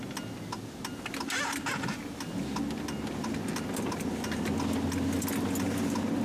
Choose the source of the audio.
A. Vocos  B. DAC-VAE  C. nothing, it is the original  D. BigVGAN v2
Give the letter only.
C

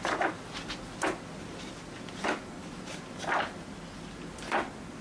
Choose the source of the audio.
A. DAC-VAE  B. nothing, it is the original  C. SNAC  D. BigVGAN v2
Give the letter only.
B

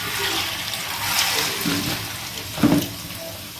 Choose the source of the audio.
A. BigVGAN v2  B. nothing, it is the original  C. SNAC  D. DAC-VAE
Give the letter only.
B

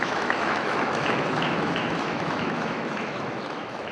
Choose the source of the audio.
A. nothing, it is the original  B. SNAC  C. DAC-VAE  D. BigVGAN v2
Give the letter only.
C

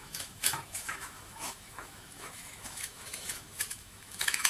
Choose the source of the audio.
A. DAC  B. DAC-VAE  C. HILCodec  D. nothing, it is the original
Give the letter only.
B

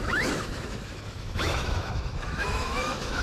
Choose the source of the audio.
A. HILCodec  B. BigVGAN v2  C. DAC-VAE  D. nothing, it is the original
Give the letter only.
C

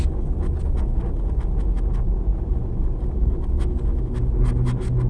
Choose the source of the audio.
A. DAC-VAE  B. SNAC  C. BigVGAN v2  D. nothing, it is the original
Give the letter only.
D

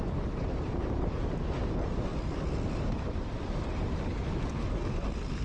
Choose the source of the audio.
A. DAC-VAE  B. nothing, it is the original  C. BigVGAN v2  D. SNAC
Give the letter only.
B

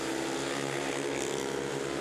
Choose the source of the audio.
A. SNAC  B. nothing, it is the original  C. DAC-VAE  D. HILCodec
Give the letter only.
B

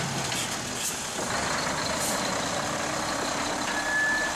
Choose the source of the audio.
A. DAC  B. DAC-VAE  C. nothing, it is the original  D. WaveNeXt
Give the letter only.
C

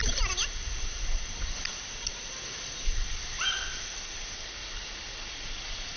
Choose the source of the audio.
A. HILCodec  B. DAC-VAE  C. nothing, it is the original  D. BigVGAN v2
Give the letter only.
C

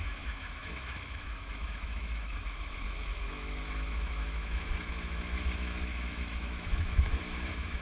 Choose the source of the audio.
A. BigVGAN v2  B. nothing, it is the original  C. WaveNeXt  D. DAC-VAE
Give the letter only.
D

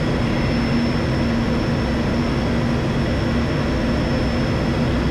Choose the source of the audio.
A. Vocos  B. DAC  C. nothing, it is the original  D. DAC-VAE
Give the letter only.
C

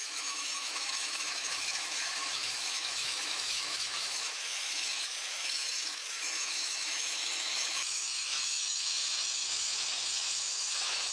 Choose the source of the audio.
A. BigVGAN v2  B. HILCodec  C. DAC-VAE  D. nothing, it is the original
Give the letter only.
C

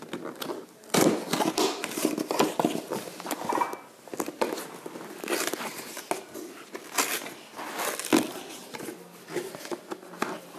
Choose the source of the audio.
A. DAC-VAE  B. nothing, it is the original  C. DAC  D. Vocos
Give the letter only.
B